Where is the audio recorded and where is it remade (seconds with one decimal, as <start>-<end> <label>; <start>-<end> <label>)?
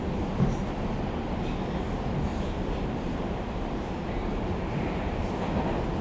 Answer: 0.0-2.3 recorded; 2.3-5.4 remade; 5.4-6.0 recorded